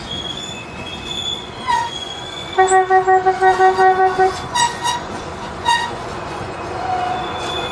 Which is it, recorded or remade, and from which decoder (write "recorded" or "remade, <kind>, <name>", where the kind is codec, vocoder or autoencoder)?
remade, vocoder, Vocos